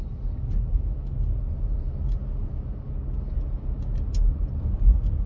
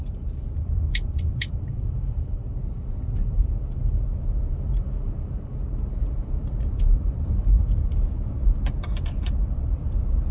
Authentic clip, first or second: first